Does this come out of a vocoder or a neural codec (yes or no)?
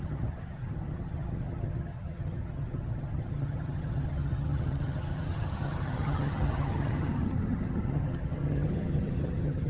yes